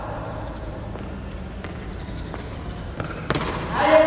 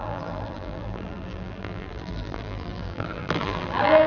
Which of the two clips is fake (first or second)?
second